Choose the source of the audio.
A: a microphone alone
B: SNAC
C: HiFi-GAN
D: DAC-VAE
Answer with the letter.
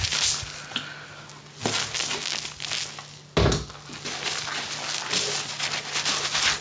A